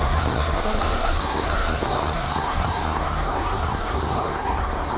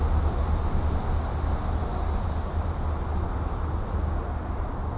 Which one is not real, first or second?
first